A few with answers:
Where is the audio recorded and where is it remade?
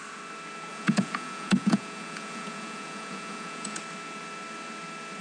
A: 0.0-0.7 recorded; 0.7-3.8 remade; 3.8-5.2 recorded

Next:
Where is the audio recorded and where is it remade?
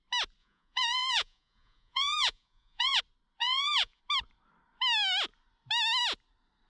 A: 0.0-0.4 recorded; 0.4-3.0 remade; 3.0-3.4 recorded; 3.4-4.0 remade; 4.0-6.7 recorded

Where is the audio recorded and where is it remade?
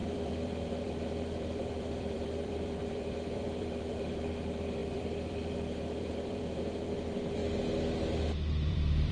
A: 0.0-7.4 remade; 7.4-8.7 recorded; 8.7-9.1 remade